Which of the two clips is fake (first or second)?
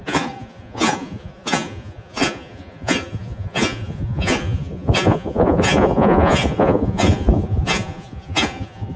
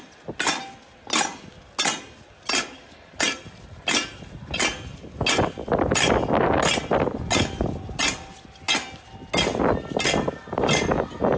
first